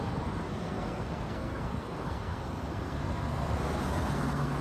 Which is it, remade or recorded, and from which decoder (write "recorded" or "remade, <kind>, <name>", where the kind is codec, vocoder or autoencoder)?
remade, codec, SNAC